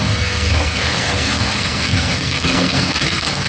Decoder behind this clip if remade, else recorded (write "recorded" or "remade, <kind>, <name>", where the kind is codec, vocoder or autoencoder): remade, codec, SNAC